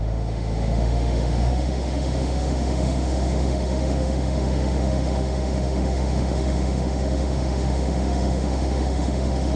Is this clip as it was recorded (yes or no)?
no